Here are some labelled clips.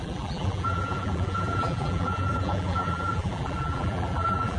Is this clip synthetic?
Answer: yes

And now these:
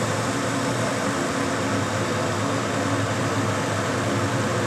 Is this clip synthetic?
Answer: no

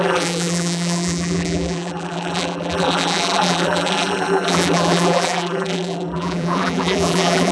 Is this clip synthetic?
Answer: yes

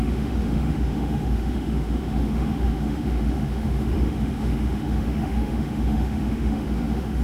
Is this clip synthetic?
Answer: yes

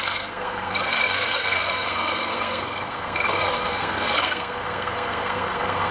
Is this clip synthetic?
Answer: yes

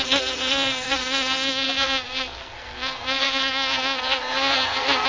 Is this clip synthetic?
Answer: yes